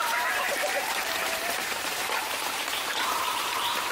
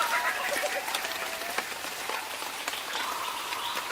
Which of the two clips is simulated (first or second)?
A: first